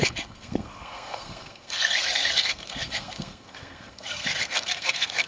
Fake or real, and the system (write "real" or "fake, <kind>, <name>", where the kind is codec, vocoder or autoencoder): fake, codec, SNAC